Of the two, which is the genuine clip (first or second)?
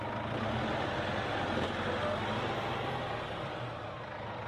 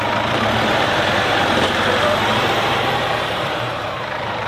first